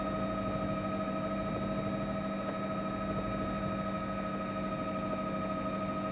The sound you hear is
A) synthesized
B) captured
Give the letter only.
B